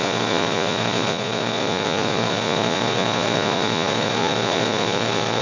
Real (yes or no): no